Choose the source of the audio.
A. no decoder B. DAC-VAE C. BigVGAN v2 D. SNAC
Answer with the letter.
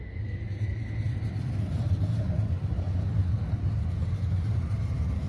A